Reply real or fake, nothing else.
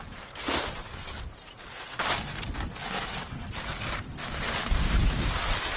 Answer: real